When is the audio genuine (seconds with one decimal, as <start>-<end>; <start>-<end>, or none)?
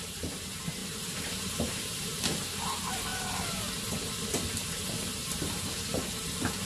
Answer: 3.1-4.5